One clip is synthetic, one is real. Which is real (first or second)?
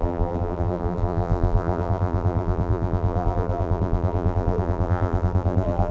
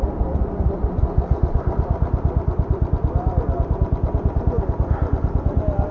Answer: second